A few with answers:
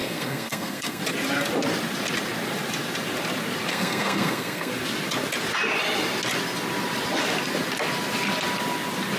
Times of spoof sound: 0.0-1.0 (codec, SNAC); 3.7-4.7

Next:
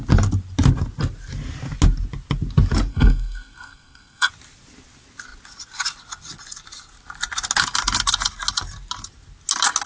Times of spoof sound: 2.9-4.3 (codec, SNAC)

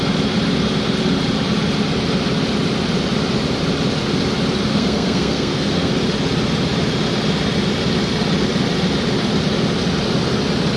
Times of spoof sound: 4.7-5.9 (codec, SNAC)

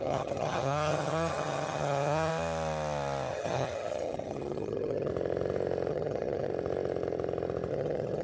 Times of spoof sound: 0.0-2.3 (vocoder, HiFi-GAN); 3.3-5.1; 5.9-6.5; 7.7-8.2

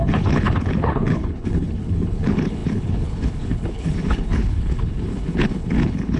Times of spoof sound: 0.0-6.2 (codec, HILCodec)

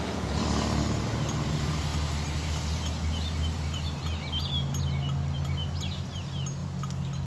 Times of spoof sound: none

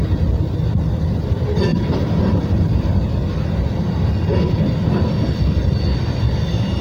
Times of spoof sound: 1.7-2.9 (vocoder, BigVGAN v2)